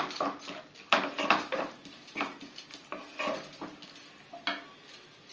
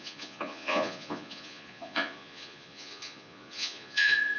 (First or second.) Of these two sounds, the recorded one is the first